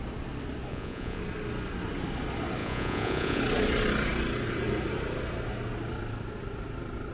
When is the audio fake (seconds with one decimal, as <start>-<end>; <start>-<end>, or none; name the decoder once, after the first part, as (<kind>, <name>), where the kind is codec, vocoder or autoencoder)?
0.7-1.2 (vocoder, Vocos); 2.6-3.4